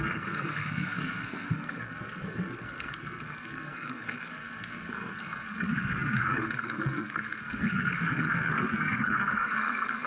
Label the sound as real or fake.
fake